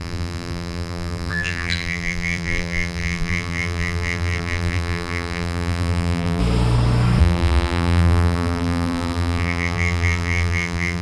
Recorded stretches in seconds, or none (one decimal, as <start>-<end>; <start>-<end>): 6.4-7.2